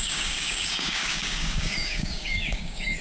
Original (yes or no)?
no